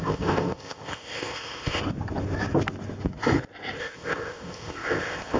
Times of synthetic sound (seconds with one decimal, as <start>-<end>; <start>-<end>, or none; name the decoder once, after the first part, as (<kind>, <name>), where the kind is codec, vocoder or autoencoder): 0.0-1.8 (codec, ZipCodec); 3.8-5.4